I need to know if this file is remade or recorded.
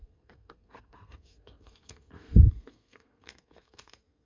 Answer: remade